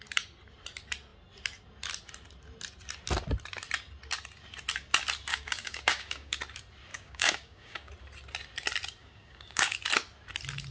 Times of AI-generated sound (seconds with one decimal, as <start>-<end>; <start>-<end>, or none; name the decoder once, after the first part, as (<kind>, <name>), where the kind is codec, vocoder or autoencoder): 5.3-6.4 (codec, DAC); 6.9-7.9; 9.0-9.8